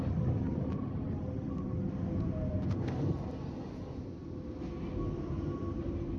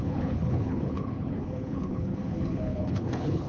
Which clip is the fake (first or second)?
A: second